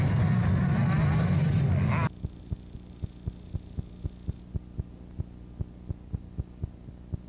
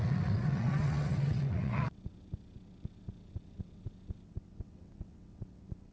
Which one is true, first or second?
first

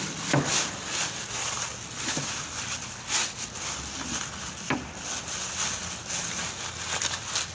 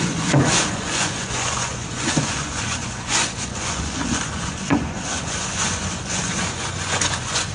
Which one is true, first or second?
first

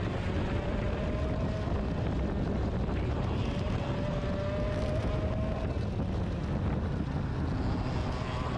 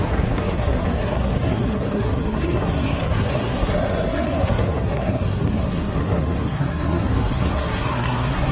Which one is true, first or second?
first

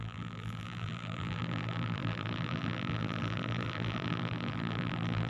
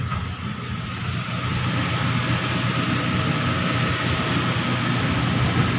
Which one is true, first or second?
second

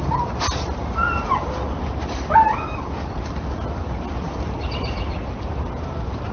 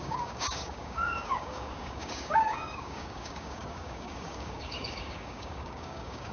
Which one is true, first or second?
first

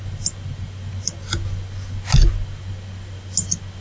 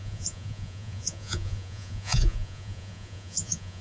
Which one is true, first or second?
first